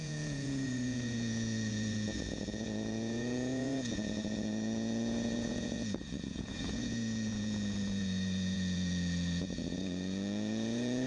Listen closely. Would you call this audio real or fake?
fake